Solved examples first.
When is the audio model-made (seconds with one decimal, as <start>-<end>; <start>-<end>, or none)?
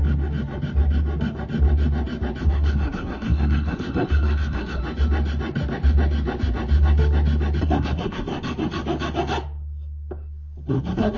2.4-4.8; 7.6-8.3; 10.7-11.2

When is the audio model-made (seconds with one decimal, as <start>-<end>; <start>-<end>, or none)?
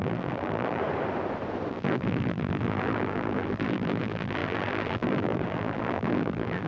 0.0-0.8; 1.7-6.7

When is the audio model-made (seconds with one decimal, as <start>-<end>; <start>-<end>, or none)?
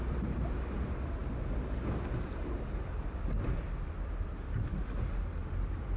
none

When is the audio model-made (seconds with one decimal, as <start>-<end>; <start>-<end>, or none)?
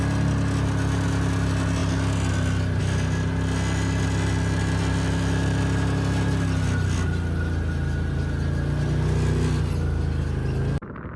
none